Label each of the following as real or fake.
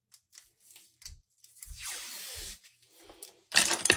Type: fake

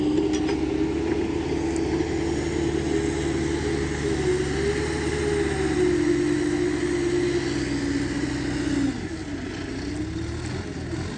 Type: real